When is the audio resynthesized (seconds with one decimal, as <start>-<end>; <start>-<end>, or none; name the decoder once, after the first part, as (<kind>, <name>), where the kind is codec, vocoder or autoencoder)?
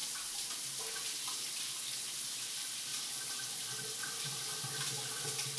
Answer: 0.0-0.8 (vocoder, BigVGAN v2); 2.9-3.5